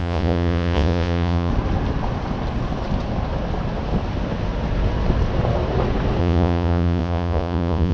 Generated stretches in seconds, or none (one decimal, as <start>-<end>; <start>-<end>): 0.0-1.5; 6.2-7.9